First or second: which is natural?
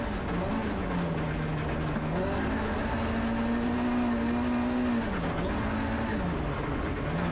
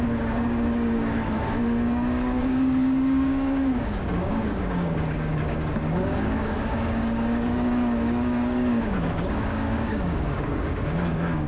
first